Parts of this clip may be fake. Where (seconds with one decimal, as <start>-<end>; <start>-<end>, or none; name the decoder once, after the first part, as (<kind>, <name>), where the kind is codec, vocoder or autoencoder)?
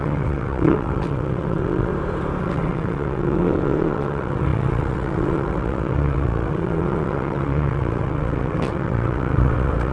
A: 0.0-1.9 (vocoder, WaveNeXt); 2.4-9.9